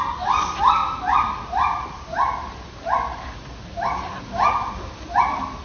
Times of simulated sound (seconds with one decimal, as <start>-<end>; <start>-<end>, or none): none